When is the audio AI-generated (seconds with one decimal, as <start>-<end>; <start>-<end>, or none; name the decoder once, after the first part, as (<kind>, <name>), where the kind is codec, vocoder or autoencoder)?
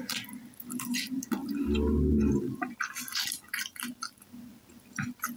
0.0-5.4 (vocoder, BigVGAN v2)